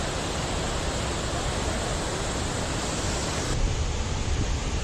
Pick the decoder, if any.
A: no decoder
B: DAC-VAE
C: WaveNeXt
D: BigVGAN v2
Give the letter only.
A